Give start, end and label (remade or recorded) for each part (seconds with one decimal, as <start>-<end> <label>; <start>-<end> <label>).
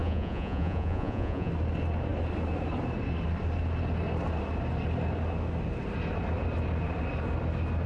0.0-1.5 remade; 1.5-7.9 recorded